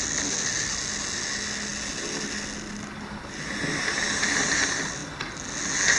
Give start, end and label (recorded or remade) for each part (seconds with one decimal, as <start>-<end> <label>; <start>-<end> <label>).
0.0-6.0 recorded